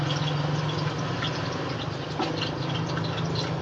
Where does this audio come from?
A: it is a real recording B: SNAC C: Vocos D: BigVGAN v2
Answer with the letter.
A